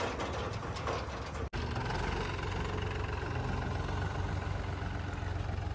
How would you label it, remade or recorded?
recorded